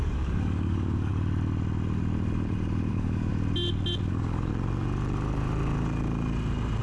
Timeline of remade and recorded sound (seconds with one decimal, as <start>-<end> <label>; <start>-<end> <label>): 0.0-1.1 remade; 1.1-2.9 recorded; 2.9-3.3 remade; 3.3-4.1 recorded; 4.1-4.5 remade; 4.5-6.8 recorded